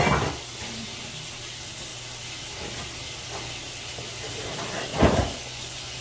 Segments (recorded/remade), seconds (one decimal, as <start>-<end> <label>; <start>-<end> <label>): 0.0-4.9 recorded; 4.9-6.0 remade